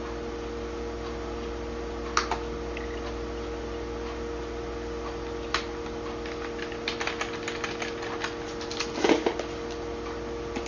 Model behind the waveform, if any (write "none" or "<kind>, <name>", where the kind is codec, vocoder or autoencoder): none